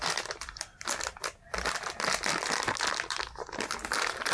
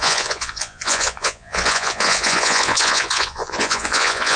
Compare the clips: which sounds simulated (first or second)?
second